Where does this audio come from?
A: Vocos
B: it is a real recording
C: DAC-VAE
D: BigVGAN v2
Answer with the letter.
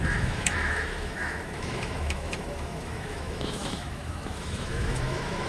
C